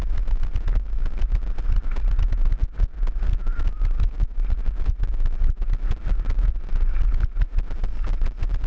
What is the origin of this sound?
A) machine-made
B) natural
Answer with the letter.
B